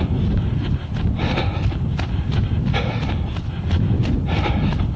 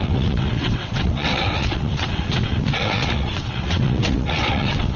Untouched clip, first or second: first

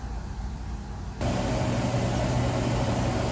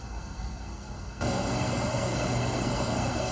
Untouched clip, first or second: first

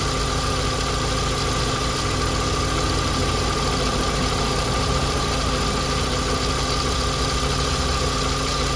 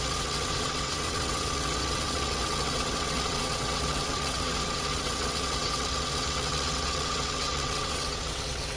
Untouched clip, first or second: first